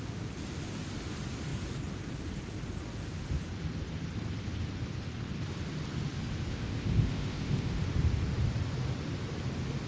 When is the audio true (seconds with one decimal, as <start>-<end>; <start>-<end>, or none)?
0.0-6.5; 7.8-9.9